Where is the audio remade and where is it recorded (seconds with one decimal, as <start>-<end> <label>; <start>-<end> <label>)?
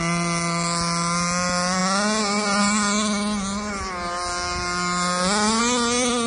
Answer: 0.0-6.3 recorded